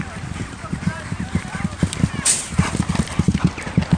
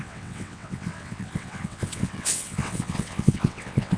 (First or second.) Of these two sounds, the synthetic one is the second